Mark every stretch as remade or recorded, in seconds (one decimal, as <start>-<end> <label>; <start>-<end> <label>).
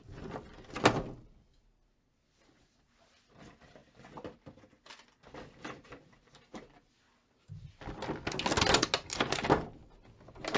0.0-10.6 recorded